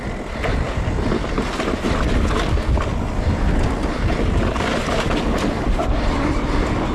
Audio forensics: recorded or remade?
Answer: recorded